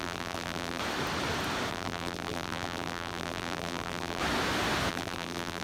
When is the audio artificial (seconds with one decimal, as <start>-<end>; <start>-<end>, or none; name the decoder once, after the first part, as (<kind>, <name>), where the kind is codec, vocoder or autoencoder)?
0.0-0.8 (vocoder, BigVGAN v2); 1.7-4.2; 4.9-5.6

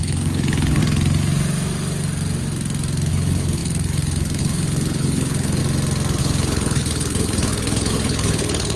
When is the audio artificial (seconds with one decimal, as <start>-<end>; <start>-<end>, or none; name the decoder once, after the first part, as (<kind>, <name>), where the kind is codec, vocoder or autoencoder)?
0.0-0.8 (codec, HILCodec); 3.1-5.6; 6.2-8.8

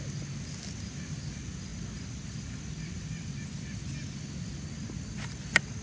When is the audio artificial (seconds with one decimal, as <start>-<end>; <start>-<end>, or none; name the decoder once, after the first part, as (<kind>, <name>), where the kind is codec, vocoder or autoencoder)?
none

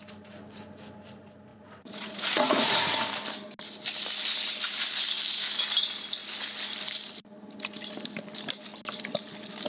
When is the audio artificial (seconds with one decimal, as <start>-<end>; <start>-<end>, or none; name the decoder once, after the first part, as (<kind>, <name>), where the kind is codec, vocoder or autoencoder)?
1.5-2.9 (vocoder, Vocos)

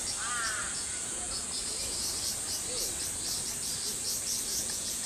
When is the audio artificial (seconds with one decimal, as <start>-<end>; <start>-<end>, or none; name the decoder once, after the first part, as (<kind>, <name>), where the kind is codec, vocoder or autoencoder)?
0.6-1.4 (vocoder, Vocos); 4.5-5.1

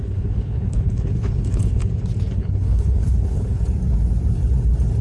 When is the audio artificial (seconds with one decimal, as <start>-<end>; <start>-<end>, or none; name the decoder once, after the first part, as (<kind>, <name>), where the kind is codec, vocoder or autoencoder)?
0.0-1.8 (codec, HILCodec); 2.3-3.6

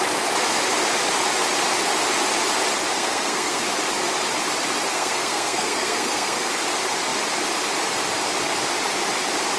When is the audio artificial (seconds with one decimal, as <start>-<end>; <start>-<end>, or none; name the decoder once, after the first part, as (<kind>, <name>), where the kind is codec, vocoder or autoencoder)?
2.9-3.6 (codec, SNAC); 4.9-6.5